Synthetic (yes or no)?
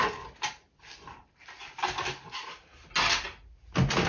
no